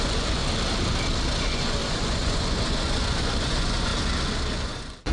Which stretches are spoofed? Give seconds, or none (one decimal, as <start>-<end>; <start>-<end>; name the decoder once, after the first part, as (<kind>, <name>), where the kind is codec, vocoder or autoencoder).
0.0-0.4 (vocoder, Vocos); 1.4-3.9; 4.6-5.1